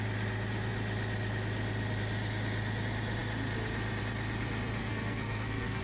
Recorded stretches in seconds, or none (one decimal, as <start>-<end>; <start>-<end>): 0.0-4.8